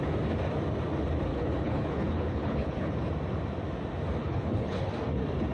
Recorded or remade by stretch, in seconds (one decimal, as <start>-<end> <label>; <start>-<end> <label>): 0.0-1.3 recorded; 1.3-3.1 remade; 3.1-4.2 recorded; 4.2-4.9 remade; 4.9-5.5 recorded